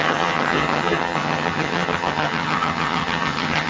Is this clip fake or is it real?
fake